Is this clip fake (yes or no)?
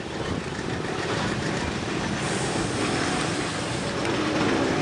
no